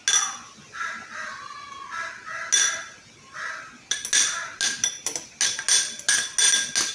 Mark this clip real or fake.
real